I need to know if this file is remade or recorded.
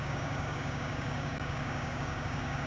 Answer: remade